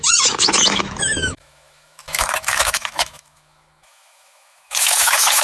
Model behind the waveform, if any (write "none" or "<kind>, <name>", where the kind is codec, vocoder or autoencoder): autoencoder, DAC-VAE